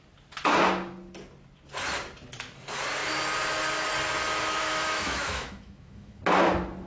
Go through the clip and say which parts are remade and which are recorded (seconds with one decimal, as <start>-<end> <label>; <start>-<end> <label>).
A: 0.0-4.6 recorded; 4.6-6.2 remade; 6.2-6.9 recorded